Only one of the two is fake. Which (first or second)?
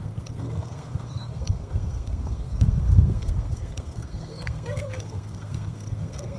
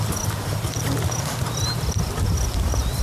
first